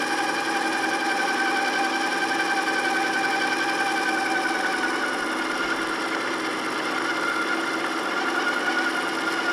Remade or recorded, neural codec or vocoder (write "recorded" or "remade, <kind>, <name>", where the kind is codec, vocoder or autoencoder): recorded